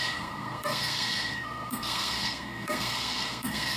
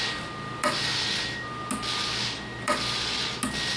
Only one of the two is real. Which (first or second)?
second